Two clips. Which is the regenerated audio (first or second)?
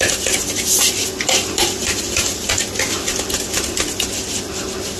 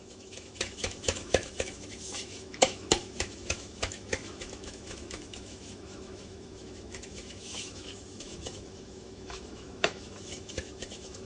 second